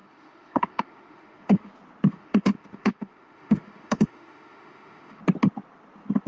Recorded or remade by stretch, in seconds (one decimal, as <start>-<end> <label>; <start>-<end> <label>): 0.0-1.7 remade; 1.7-2.1 recorded; 2.1-5.2 remade; 5.2-6.3 recorded